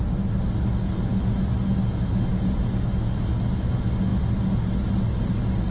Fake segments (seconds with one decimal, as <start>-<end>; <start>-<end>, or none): none